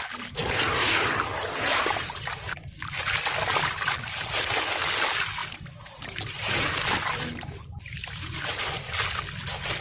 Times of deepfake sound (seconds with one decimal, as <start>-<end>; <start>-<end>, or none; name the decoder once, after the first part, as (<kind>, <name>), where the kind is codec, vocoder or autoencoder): 5.4-8.9 (vocoder, BigVGAN v2)